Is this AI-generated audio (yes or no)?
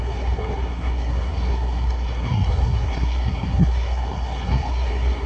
yes